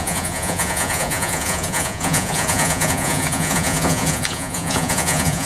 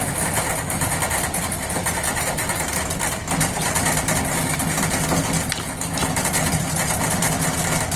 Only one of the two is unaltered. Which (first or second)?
second